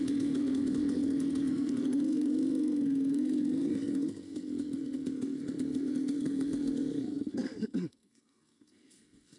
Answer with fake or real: fake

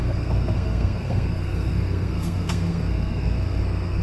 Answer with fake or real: fake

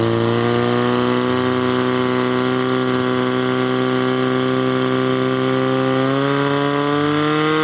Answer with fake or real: real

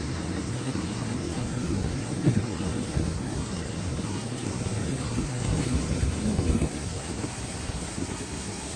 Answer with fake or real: fake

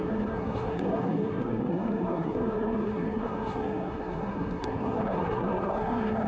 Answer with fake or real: fake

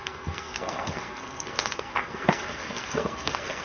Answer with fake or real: fake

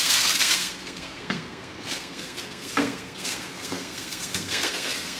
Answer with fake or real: fake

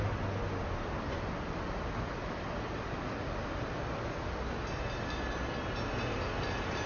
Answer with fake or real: real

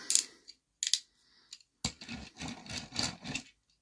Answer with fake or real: real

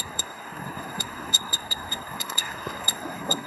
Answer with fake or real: fake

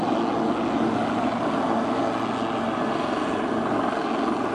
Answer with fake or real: real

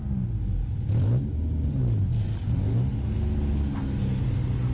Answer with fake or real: real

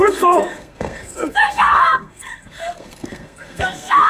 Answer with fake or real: fake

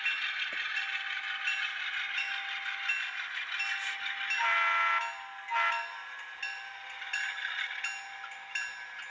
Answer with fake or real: real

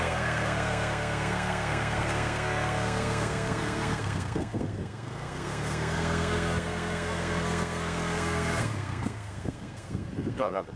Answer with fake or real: fake